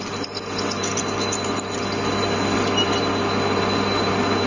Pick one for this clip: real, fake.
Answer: real